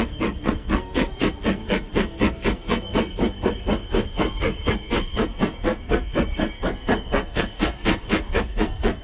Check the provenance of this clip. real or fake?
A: fake